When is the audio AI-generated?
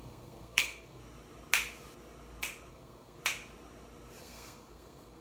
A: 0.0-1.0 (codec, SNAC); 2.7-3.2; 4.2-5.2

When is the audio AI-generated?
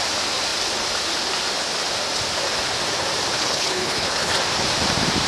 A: 3.4-4.3 (codec, HILCodec)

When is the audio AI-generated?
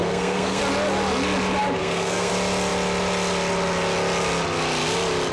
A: 0.0-0.6 (codec, SNAC); 1.8-2.3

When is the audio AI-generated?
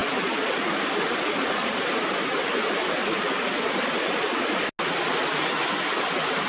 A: none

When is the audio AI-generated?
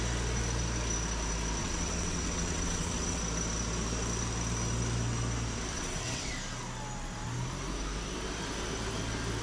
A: 1.6-3.2 (vocoder, WaveNeXt); 5.7-6.3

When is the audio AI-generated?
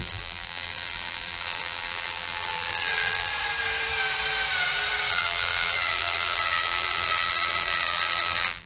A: 0.0-3.3 (vocoder, BigVGAN v2); 5.1-8.7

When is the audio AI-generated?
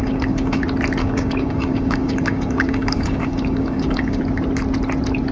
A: 0.0-0.6 (codec, DAC); 1.0-4.2